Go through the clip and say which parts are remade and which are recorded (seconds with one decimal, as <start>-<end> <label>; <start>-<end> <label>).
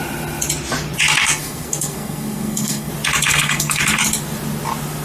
0.0-1.2 recorded; 1.2-2.9 remade; 2.9-3.3 recorded; 3.3-3.8 remade; 3.8-5.0 recorded